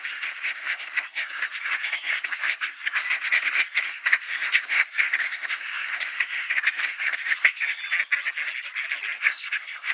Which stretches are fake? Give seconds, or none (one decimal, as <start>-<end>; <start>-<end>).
0.0-7.8; 9.2-9.9